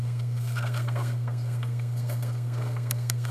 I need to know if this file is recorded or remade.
remade